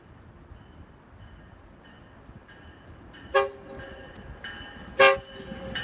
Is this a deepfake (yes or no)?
no